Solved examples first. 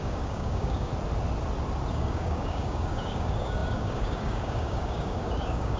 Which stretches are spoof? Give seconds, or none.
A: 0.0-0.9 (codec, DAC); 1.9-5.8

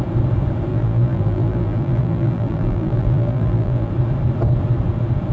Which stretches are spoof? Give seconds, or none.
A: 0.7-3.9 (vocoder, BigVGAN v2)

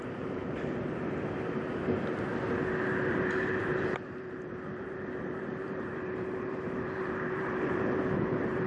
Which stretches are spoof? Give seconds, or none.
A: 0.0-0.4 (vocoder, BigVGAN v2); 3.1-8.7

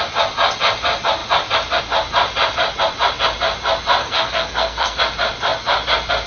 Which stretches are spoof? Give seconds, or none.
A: 4.0-5.0 (codec, SNAC)